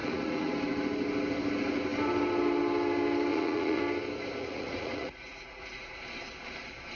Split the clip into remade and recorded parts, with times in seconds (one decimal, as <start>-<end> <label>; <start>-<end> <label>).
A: 0.0-0.5 remade; 0.5-3.3 recorded; 3.3-3.8 remade; 3.8-4.4 recorded; 4.4-6.0 remade; 6.0-7.0 recorded